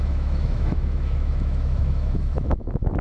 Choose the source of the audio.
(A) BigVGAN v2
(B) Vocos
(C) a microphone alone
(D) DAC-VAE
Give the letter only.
D